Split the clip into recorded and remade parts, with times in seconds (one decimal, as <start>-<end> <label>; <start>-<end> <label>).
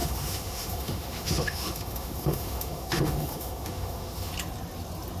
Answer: 0.0-4.3 remade; 4.3-5.2 recorded